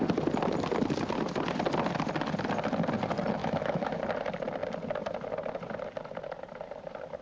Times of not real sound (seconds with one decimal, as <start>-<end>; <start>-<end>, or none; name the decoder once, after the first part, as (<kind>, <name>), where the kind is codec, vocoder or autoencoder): 3.4-4.0 (autoencoder, DAC-VAE)